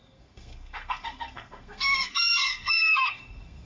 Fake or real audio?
fake